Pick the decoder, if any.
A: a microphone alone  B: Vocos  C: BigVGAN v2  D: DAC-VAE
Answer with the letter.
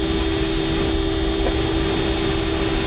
A